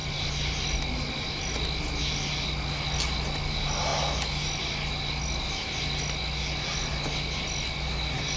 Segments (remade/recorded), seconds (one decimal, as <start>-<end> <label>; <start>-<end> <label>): 0.0-8.4 recorded